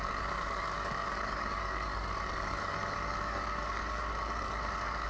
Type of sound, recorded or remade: remade